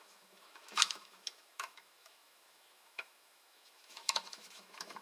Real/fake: fake